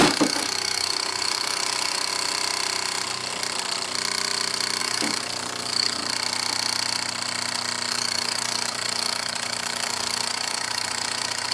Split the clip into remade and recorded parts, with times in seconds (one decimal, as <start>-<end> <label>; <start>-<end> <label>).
0.0-2.1 remade; 2.1-4.8 recorded; 4.8-6.0 remade; 6.0-7.9 recorded; 7.9-11.5 remade